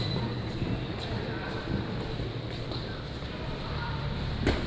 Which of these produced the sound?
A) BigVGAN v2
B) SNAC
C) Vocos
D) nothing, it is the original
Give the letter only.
A